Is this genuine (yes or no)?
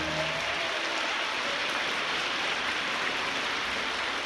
yes